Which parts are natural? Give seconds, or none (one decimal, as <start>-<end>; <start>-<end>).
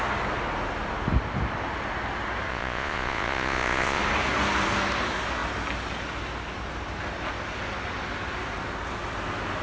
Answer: 0.0-2.5; 4.0-9.6